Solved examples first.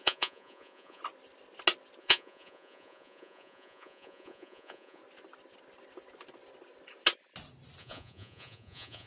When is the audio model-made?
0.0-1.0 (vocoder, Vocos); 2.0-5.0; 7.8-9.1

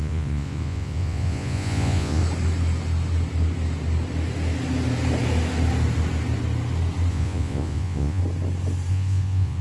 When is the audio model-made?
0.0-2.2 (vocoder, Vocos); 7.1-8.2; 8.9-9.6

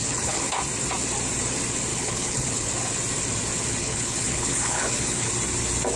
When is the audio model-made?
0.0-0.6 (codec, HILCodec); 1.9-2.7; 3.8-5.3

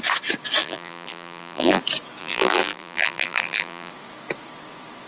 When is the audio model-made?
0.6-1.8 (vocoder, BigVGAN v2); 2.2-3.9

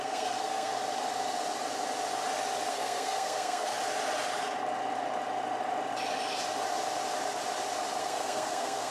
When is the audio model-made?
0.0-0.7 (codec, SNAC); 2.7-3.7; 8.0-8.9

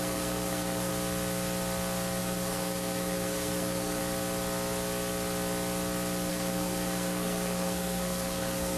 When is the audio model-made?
0.0-0.9 (codec, SNAC); 2.2-4.0; 6.3-8.8

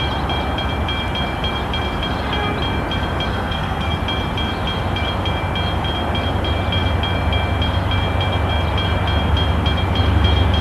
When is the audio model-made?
3.3-3.9 (codec, SNAC)